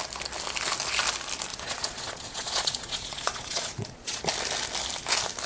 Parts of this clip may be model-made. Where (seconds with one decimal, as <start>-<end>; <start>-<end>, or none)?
1.5-4.2